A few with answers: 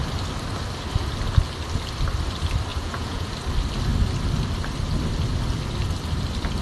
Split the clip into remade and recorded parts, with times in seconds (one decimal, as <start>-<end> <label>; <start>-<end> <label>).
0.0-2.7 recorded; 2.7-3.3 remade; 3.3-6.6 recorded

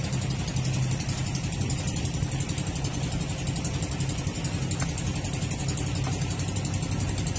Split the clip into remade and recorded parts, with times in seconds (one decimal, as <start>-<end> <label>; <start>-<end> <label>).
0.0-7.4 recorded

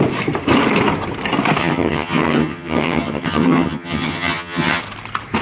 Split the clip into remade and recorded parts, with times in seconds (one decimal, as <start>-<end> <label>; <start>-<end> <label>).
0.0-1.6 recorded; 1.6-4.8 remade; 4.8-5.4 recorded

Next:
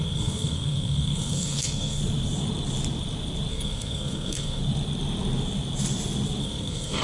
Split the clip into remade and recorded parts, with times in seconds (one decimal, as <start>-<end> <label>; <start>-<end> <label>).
0.0-2.0 remade; 2.0-3.5 recorded; 3.5-4.6 remade; 4.6-6.4 recorded; 6.4-7.0 remade

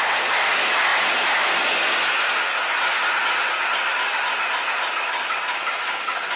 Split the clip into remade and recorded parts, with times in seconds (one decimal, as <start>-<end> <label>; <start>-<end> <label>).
0.0-6.4 recorded

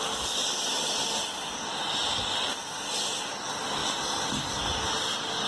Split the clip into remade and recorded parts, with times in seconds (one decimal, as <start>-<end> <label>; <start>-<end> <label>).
0.0-0.7 recorded; 0.7-2.0 remade; 2.0-3.8 recorded; 3.8-4.6 remade; 4.6-5.5 recorded

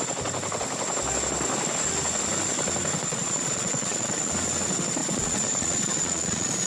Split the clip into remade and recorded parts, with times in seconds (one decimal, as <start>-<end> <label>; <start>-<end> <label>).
0.0-3.1 recorded; 3.1-4.3 remade; 4.3-5.0 recorded; 5.0-6.7 remade

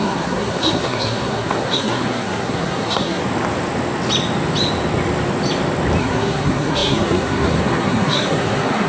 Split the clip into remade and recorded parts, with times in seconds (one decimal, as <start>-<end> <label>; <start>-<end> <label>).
0.0-3.2 remade; 3.2-6.0 recorded; 6.0-8.9 remade